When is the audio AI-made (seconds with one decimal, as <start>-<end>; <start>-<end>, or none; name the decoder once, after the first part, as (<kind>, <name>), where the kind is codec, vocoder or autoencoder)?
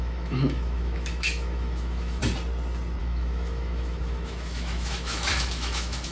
0.0-2.2 (autoencoder, DAC-VAE); 3.0-6.1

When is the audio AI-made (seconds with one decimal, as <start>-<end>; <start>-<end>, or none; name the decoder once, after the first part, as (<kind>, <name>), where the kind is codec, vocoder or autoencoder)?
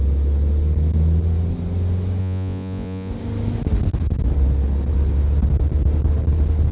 2.2-3.1 (vocoder, Vocos)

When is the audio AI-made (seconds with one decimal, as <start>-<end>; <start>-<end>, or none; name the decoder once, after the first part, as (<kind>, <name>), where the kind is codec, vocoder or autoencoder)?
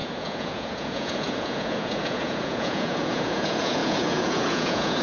0.0-5.0 (vocoder, Vocos)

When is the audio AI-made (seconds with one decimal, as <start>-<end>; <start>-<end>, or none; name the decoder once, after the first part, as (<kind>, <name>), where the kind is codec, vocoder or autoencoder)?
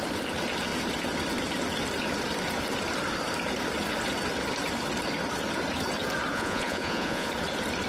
6.3-7.3 (vocoder, Vocos)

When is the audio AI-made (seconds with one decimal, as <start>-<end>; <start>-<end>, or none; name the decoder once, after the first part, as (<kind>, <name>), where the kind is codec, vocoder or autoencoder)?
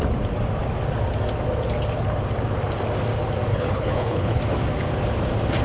3.5-4.4 (codec, HILCodec)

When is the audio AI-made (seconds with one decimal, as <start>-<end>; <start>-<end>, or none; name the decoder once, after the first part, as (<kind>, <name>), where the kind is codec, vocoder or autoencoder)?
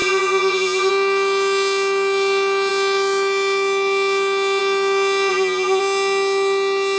0.0-0.9 (vocoder, Vocos); 5.3-5.8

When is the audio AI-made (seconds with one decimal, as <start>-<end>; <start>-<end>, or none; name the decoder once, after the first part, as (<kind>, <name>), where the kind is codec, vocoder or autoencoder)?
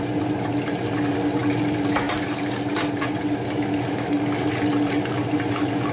none